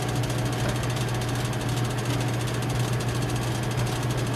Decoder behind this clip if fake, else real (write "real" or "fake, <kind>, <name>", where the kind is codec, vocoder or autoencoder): real